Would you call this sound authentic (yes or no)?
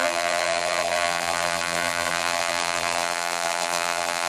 no